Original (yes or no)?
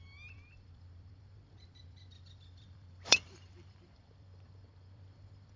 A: no